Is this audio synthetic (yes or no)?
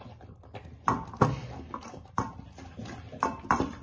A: no